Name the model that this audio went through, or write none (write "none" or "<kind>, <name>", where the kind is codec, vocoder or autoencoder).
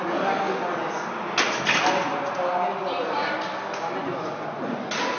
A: none